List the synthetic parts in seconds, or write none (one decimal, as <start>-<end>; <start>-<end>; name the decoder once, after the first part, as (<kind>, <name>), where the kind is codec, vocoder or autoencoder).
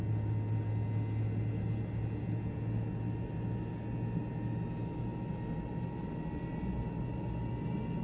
none